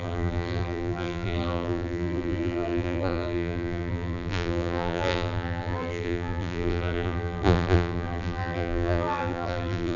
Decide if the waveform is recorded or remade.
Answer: remade